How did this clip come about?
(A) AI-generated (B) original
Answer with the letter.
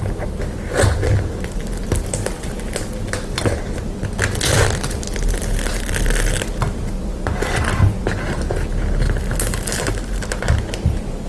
B